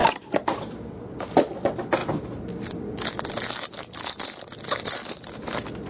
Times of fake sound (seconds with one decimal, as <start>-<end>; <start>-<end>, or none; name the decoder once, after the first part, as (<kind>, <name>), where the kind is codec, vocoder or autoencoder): none